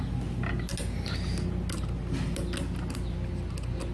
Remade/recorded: recorded